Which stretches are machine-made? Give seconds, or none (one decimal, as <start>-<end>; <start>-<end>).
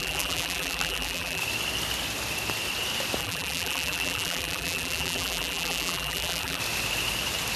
0.0-1.4; 3.2-6.6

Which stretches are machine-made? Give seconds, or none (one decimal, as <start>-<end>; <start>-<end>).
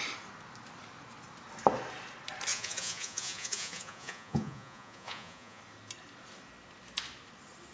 2.5-5.6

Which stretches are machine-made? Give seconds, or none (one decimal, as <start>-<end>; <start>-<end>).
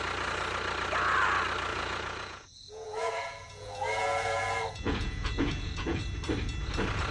1.7-6.0